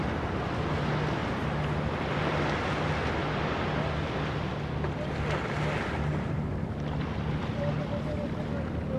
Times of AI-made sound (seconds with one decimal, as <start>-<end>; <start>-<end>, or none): none